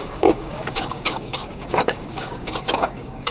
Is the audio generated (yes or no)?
yes